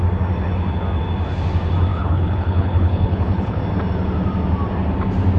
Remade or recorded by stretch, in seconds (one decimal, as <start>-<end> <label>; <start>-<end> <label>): 0.0-1.9 recorded; 1.9-3.6 remade; 3.6-5.4 recorded